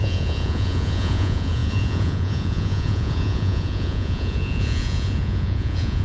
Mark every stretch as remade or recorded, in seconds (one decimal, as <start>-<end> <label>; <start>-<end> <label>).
0.0-6.0 remade